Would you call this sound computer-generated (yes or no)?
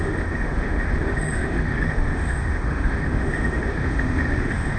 yes